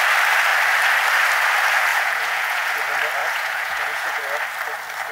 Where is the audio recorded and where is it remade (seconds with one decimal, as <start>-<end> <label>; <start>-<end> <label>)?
0.0-1.9 recorded; 1.9-2.8 remade; 2.8-3.2 recorded; 3.2-4.2 remade; 4.2-5.1 recorded